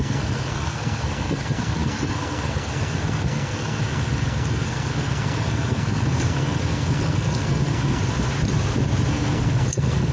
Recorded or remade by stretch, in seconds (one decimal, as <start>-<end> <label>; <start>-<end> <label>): 0.0-8.0 remade; 8.0-9.1 recorded; 9.1-10.1 remade